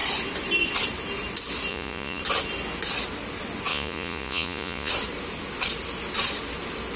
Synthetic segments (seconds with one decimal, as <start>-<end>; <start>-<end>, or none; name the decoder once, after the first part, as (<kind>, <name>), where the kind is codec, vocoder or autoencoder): 1.7-2.2 (vocoder, Vocos); 3.7-4.9